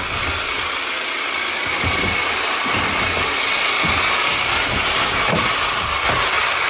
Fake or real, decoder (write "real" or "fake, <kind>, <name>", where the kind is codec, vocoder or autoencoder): real